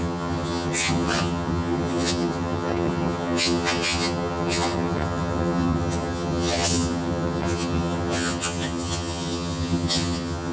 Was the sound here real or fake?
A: fake